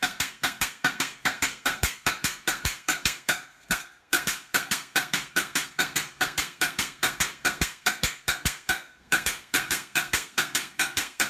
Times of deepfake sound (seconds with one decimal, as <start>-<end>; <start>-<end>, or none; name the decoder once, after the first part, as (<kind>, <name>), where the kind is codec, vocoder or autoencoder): 0.0-11.3 (codec, SNAC)